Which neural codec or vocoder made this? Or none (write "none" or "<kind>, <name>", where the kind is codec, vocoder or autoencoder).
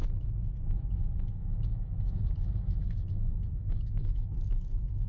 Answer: autoencoder, DAC-VAE